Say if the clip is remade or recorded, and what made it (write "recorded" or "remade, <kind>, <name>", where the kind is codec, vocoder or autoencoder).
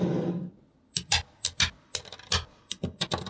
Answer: recorded